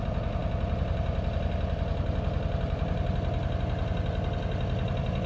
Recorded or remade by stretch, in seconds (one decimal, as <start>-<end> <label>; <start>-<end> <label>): 0.0-5.3 recorded